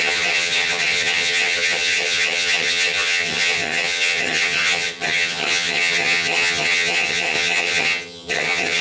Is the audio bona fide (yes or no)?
no